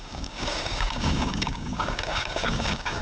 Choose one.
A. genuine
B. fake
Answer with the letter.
B